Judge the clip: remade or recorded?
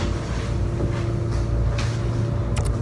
recorded